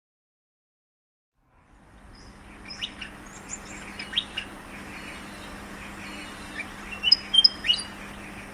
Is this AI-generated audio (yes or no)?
no